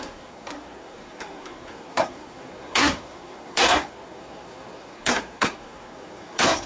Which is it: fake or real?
fake